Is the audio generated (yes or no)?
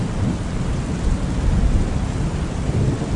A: no